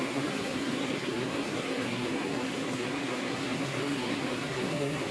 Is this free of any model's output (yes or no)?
no